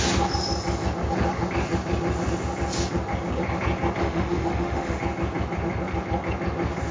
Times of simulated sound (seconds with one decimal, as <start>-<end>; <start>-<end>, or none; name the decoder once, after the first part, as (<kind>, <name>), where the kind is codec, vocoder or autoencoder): 4.0-5.0 (autoencoder, DAC-VAE)